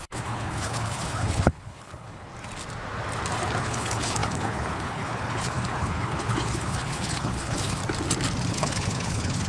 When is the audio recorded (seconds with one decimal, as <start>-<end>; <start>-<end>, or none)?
2.3-3.6; 7.8-8.5